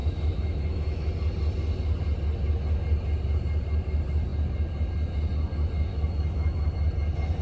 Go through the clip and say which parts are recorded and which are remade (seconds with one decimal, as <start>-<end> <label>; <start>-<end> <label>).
0.0-1.1 remade; 1.1-5.9 recorded; 5.9-6.7 remade; 6.7-7.4 recorded